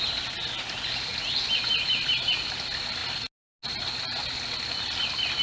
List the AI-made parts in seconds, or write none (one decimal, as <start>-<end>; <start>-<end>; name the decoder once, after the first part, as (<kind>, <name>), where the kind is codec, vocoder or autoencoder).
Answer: none

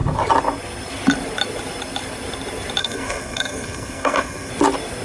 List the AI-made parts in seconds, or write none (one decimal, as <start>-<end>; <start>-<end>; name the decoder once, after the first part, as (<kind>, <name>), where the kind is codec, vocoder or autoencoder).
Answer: 2.8-4.5 (codec, SNAC)